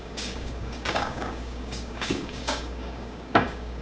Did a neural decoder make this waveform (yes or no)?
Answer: yes